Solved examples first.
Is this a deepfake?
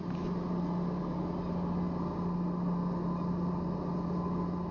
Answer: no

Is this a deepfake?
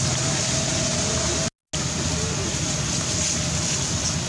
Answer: no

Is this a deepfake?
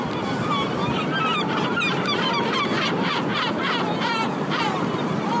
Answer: no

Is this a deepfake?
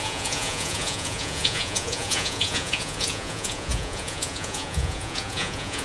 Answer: yes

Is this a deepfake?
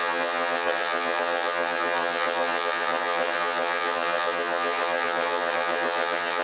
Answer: yes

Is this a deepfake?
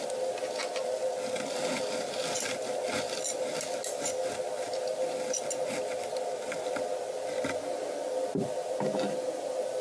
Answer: no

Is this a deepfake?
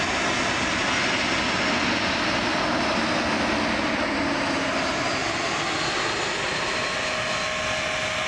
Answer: no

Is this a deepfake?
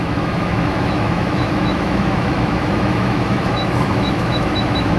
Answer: yes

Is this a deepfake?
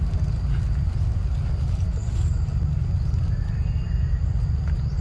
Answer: no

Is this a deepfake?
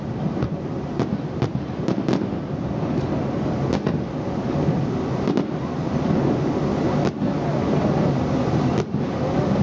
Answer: no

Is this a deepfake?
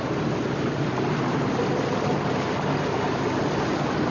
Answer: no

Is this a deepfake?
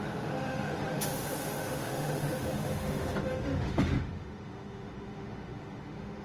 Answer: yes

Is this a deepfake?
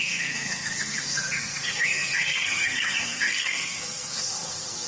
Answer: yes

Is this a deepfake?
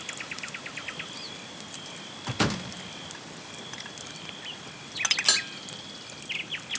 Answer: no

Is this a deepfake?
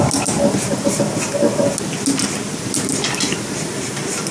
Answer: no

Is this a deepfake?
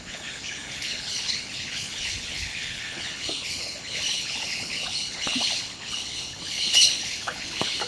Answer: yes